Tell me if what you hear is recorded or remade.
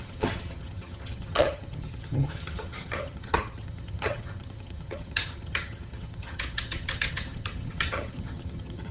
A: remade